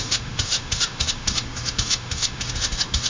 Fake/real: fake